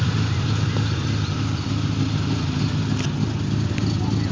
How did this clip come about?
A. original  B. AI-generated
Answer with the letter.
A